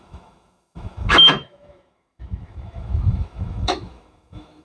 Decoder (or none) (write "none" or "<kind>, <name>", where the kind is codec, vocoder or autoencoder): autoencoder, DAC-VAE